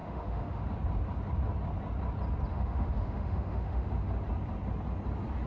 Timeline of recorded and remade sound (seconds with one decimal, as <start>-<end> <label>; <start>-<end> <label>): 0.0-0.6 remade; 0.6-2.5 recorded; 2.5-3.9 remade; 3.9-5.5 recorded

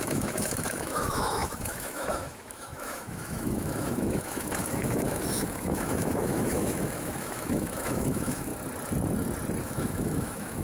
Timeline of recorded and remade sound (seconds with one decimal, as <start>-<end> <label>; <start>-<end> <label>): 0.0-8.5 remade; 8.5-9.6 recorded; 9.6-10.6 remade

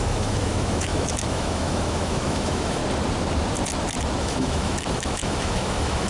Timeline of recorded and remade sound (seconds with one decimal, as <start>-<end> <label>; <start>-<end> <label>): 0.0-2.8 remade; 2.8-4.2 recorded; 4.2-6.1 remade

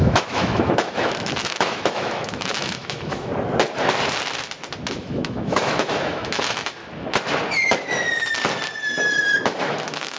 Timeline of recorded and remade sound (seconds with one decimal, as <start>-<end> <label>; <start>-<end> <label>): 0.0-3.3 remade; 3.3-4.9 recorded; 4.9-6.8 remade; 6.8-9.6 recorded; 9.6-10.2 remade

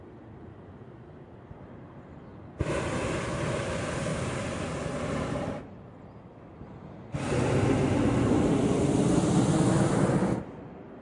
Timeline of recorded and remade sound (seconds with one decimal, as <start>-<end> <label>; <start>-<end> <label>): 0.0-11.0 recorded

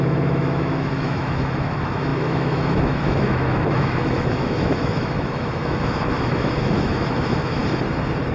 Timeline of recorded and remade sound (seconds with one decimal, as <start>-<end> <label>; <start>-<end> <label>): 0.0-7.6 remade; 7.6-8.3 recorded